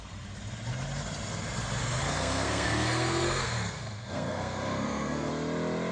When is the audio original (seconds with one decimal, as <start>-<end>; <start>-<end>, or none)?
0.0-1.8; 5.3-5.9